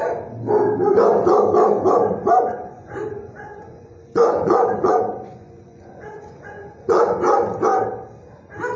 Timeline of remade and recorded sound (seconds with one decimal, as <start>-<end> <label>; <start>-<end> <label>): 0.0-2.1 recorded; 2.1-7.2 remade; 7.2-8.8 recorded